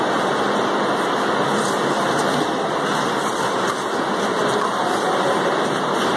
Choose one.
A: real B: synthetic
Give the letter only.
A